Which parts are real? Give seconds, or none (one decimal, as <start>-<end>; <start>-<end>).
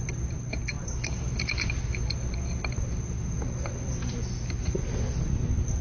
0.0-5.8